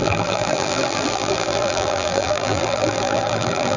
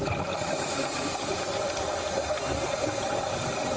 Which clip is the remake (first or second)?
first